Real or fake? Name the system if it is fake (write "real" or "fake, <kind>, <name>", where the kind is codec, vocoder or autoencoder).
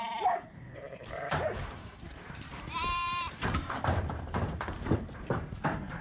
fake, vocoder, BigVGAN v2